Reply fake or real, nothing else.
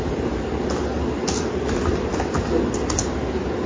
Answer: real